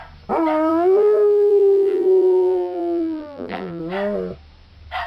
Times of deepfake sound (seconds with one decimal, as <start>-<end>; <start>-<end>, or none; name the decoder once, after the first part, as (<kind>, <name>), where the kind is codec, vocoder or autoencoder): 0.7-3.8 (vocoder, BigVGAN v2)